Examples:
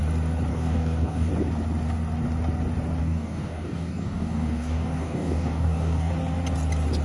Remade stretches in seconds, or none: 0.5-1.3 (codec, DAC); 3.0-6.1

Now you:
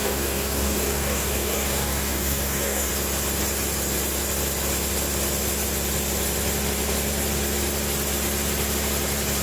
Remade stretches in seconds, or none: 0.0-2.9 (codec, DAC)

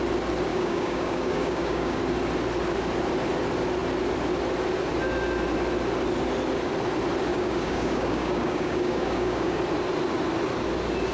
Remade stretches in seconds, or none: 0.5-2.0 (codec, DAC); 7.3-9.6

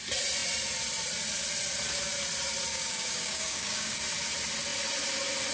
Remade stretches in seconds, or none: 2.7-4.0 (codec, DAC)